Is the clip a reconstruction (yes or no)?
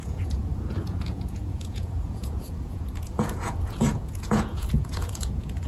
yes